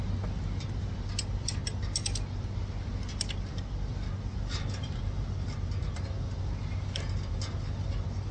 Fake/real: real